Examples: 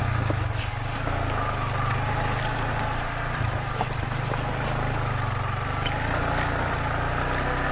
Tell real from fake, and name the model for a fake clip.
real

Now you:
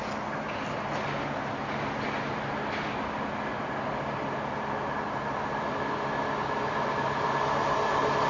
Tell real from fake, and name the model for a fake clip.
real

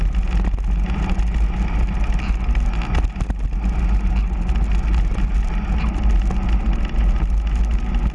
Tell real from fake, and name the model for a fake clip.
real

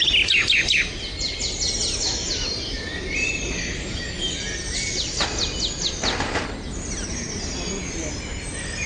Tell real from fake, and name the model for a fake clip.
real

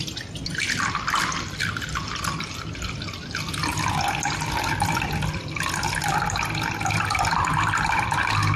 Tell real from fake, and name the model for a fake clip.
real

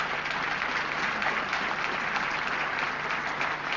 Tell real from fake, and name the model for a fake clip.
real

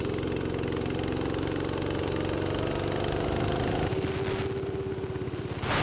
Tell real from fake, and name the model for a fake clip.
real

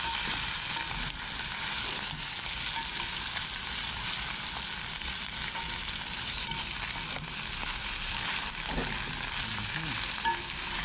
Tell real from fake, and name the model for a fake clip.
real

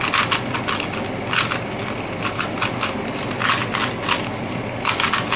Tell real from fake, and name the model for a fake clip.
real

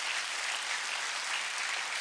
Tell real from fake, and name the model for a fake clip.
real